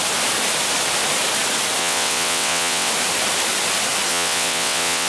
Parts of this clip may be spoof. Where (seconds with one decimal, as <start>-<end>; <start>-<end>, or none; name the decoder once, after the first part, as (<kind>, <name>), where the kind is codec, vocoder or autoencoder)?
1.8-2.9 (vocoder, WaveNeXt); 4.1-5.1